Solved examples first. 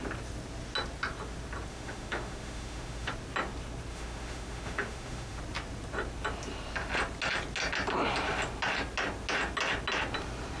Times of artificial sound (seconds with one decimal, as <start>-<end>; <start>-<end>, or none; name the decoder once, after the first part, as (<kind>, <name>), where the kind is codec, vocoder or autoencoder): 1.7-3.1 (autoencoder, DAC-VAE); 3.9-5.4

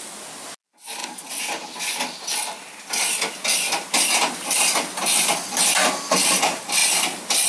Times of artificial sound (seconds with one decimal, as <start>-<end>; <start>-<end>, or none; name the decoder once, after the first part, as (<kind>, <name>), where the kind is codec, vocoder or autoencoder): none

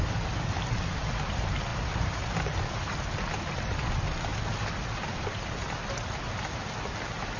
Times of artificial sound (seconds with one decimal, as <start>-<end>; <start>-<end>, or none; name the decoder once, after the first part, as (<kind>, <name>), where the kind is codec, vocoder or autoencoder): 1.7-2.6 (vocoder, BigVGAN v2)